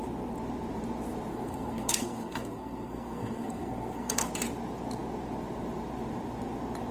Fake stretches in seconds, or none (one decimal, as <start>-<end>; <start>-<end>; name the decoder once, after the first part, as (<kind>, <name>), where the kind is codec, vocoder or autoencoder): 1.3-4.3 (codec, SNAC)